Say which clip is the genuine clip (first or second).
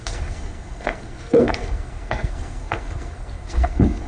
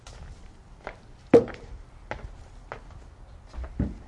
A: second